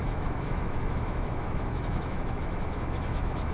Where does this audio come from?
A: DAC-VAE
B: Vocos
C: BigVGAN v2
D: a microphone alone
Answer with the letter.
A